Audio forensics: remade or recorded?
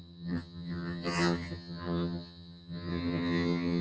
remade